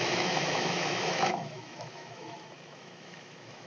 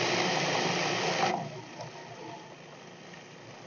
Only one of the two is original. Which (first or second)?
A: second